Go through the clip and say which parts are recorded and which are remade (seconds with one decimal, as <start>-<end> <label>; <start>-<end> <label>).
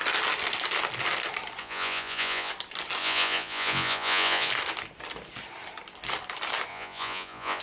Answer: 0.0-1.6 recorded; 1.6-2.5 remade; 2.5-3.0 recorded; 3.0-4.5 remade; 4.5-6.7 recorded; 6.7-7.6 remade